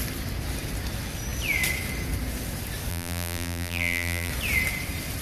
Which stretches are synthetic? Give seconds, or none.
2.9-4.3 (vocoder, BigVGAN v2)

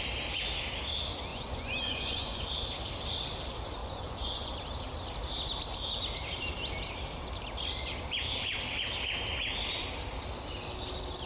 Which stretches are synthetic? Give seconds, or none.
1.3-2.4 (vocoder, Vocos); 3.8-4.5

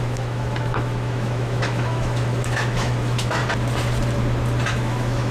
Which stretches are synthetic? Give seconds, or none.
0.0-3.4 (autoencoder, DAC-VAE); 4.7-5.3